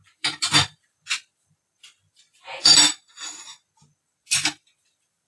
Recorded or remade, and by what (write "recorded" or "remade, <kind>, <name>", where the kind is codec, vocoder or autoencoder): remade, vocoder, BigVGAN v2